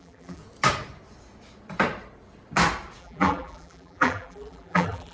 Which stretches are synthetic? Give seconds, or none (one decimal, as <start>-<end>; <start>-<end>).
0.0-0.4; 3.0-5.1